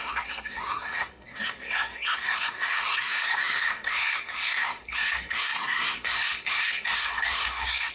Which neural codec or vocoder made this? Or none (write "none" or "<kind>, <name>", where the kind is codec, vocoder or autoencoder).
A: codec, SNAC